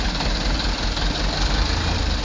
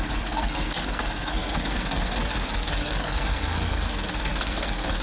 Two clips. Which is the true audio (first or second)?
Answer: first